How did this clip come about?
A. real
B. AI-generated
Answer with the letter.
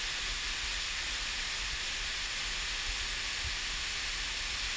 A